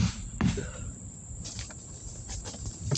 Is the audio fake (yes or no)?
yes